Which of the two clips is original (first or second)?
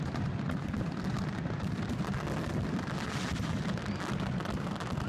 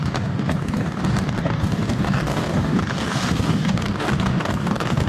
first